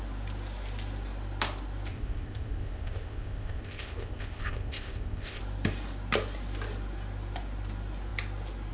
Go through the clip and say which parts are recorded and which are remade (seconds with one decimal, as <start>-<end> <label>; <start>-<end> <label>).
0.0-1.9 recorded; 1.9-5.4 remade; 5.4-8.7 recorded